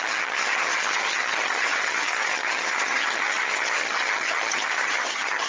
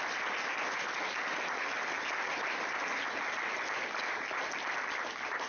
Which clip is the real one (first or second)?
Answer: second